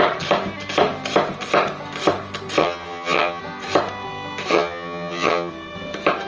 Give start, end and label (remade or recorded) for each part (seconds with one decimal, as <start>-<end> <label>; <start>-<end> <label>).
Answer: 0.0-2.6 recorded; 2.6-3.4 remade; 3.4-4.5 recorded; 4.5-5.5 remade; 5.5-6.3 recorded